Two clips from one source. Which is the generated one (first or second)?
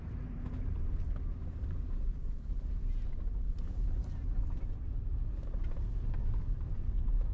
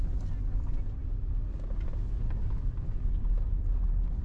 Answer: first